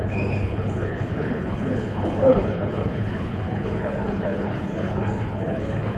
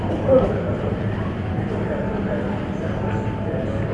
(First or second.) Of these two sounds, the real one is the second